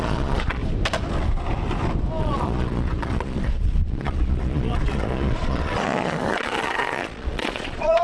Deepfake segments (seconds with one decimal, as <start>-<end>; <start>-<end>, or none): 0.0-0.6; 2.2-8.0